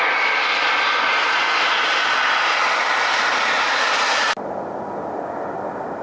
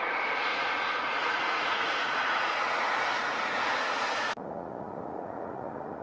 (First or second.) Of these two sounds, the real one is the first